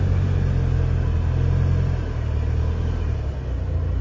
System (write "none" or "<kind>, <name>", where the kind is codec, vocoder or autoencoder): none